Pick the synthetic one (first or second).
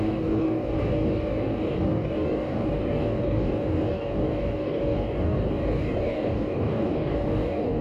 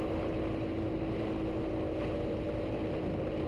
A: first